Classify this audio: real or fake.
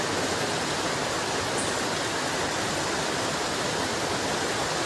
real